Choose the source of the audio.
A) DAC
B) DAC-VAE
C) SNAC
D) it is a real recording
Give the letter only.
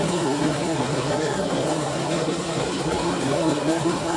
C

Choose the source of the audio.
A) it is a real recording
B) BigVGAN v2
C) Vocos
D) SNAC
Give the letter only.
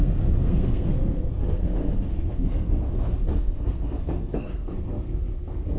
D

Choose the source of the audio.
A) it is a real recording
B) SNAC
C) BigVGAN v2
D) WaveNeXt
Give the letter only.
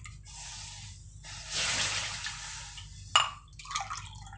A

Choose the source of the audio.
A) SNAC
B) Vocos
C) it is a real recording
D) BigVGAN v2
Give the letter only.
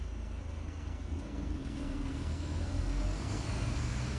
A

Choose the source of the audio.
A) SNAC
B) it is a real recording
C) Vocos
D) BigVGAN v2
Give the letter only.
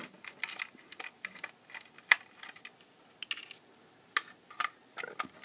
B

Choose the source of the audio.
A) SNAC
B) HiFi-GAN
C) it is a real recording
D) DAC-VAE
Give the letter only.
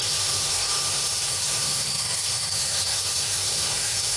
A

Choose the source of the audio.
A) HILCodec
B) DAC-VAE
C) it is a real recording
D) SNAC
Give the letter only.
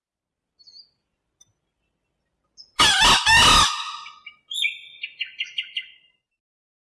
C